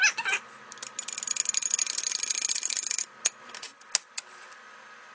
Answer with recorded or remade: recorded